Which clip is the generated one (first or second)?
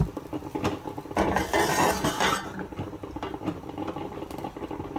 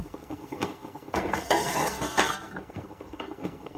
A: second